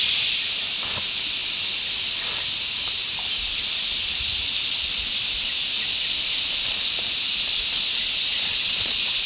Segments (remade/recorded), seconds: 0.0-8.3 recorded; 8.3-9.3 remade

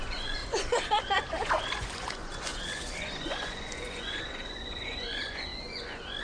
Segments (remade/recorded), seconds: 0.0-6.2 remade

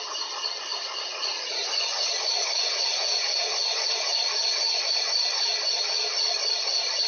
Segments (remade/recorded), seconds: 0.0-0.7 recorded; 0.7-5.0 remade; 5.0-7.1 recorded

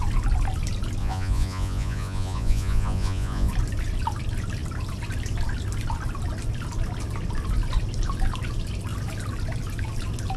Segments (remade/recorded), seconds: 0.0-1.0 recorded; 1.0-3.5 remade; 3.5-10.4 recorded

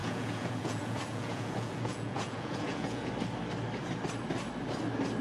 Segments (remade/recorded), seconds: 0.0-3.1 remade; 3.1-5.2 recorded

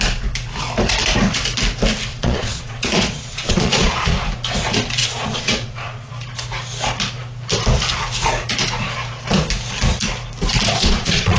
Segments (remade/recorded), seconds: 0.0-2.1 recorded; 2.1-4.1 remade; 4.1-5.0 recorded; 5.0-6.1 remade; 6.1-10.8 recorded; 10.8-11.4 remade

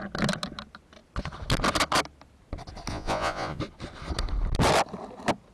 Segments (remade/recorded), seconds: 0.0-2.9 recorded; 2.9-3.6 remade; 3.6-5.5 recorded